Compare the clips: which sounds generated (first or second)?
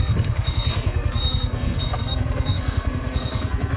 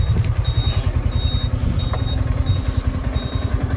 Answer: first